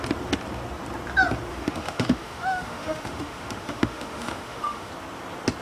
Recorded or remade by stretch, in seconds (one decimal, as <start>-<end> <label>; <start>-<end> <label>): 0.0-1.5 recorded; 1.5-4.9 remade; 4.9-5.6 recorded